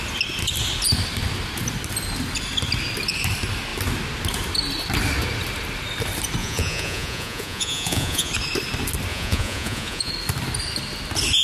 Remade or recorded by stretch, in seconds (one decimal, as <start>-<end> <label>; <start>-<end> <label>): 0.0-6.4 recorded; 6.4-8.3 remade; 8.3-9.1 recorded; 9.1-10.1 remade; 10.1-11.4 recorded